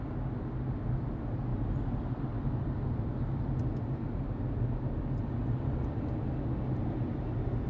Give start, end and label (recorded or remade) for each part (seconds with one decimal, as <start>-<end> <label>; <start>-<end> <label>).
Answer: 0.0-7.7 recorded

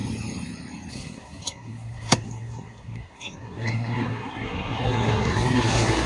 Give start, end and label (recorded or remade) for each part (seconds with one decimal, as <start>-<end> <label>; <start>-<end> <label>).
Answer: 0.0-0.9 recorded; 0.9-6.1 remade

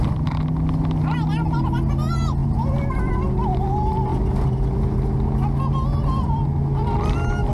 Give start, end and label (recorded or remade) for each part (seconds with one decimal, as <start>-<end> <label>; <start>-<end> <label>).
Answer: 0.0-2.4 recorded; 2.4-3.1 remade; 3.1-7.5 recorded

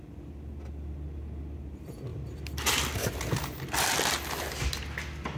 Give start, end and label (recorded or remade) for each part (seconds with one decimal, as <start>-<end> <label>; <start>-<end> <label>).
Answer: 0.0-5.4 recorded

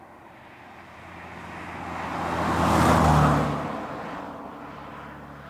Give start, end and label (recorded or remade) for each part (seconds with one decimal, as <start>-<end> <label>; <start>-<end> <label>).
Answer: 0.0-5.5 recorded

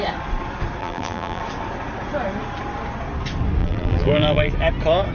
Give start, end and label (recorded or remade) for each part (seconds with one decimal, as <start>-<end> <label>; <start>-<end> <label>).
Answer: 0.0-0.8 recorded; 0.8-1.4 remade; 1.4-3.6 recorded; 3.6-4.5 remade; 4.5-5.1 recorded